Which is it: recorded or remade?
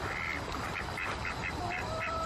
recorded